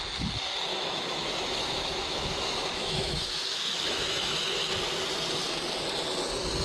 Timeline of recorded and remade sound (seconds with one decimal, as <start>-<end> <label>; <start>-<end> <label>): 0.0-0.7 recorded; 0.7-4.7 remade; 4.7-6.6 recorded